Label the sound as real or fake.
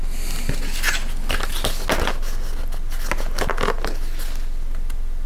real